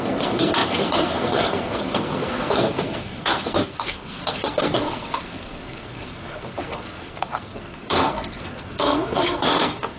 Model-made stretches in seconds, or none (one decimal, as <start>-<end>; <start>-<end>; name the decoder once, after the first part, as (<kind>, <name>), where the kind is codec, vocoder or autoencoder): 0.0-10.0 (codec, SNAC)

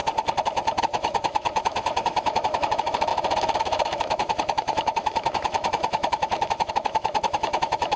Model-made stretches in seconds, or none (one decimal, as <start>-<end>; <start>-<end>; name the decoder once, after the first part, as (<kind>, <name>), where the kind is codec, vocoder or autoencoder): 0.8-8.0 (autoencoder, DAC-VAE)

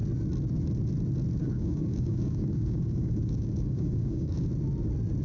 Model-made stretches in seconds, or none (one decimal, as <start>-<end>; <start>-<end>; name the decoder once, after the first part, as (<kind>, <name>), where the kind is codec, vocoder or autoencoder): 1.4-4.5 (codec, DAC)

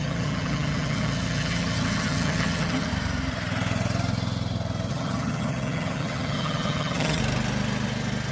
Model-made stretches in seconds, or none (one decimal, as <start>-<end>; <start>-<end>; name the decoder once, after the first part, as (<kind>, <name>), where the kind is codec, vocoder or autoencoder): 0.0-2.9 (vocoder, HiFi-GAN); 4.9-7.2